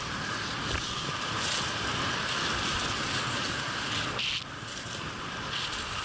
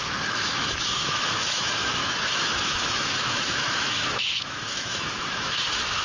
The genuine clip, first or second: first